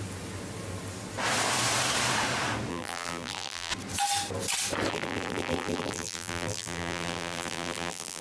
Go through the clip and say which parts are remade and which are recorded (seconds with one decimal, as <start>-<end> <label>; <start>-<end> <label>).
0.0-2.7 recorded; 2.7-3.7 remade; 3.7-4.9 recorded; 4.9-8.2 remade

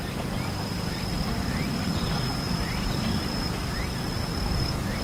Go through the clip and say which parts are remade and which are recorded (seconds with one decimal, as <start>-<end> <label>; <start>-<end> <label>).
0.0-1.1 recorded; 1.1-3.7 remade; 3.7-4.3 recorded; 4.3-5.0 remade

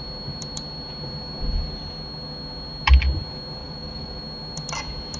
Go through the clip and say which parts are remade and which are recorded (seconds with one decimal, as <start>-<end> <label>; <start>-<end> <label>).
0.0-3.6 recorded; 3.6-4.2 remade; 4.2-5.2 recorded

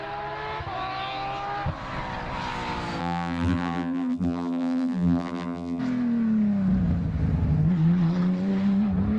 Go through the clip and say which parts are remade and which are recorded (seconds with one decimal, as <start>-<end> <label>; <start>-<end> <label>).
0.0-3.0 recorded; 3.0-5.8 remade; 5.8-9.2 recorded